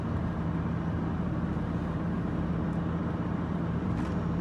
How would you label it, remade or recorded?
recorded